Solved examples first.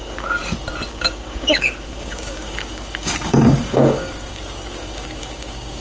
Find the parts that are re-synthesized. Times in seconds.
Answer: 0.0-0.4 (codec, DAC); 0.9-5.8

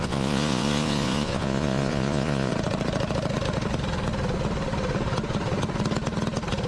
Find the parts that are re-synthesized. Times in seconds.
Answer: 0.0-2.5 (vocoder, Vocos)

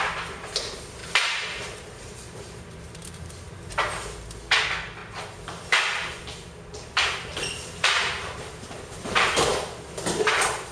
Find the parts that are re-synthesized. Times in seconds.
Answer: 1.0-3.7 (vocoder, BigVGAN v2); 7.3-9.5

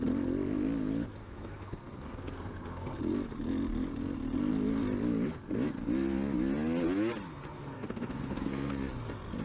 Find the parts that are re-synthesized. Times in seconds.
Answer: 1.2-3.0 (codec, SNAC); 7.3-8.7

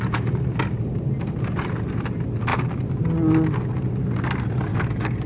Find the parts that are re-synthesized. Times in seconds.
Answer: 4.7-5.3 (codec, DAC)